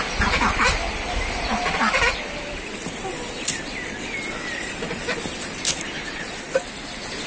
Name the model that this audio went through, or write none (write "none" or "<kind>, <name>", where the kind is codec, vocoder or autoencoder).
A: none